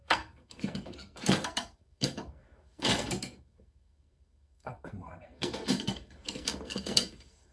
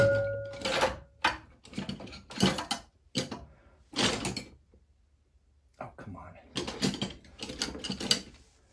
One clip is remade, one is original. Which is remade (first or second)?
first